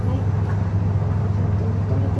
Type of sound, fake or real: real